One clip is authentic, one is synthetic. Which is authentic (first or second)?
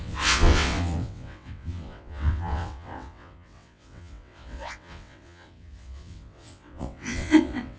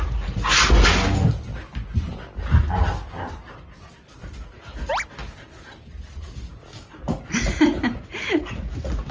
second